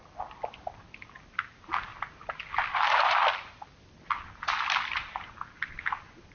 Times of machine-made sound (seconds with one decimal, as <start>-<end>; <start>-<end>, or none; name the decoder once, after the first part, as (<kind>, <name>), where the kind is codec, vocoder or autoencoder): none